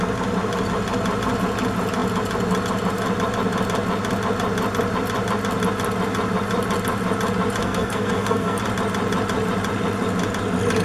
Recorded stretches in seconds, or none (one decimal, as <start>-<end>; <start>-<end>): 0.0-7.6; 8.6-10.8